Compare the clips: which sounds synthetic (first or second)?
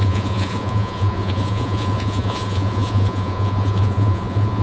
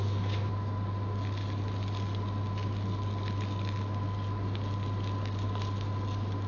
first